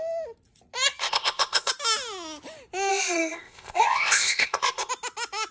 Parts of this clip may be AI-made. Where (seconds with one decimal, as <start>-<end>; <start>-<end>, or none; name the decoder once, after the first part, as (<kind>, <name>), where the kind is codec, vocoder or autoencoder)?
1.0-1.7 (codec, ZipCodec); 2.9-4.9